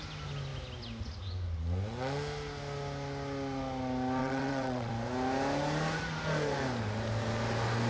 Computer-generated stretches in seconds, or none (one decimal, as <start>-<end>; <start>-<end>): 4.2-4.9

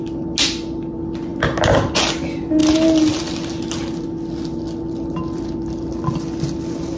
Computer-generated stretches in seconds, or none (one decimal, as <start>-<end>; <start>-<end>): none

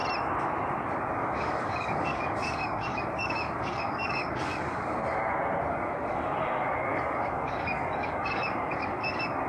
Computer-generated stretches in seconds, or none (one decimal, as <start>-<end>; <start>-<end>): 1.0-5.0; 5.7-9.5

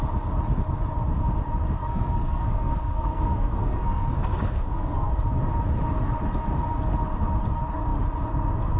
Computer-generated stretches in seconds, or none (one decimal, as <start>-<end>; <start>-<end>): 1.8-5.1